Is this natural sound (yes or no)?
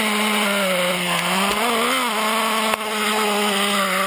yes